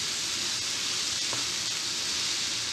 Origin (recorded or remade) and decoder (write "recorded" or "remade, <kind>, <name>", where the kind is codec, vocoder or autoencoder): recorded